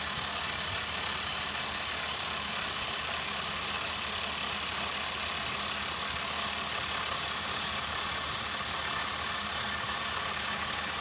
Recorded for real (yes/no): yes